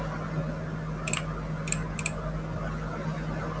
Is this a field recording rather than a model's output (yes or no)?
yes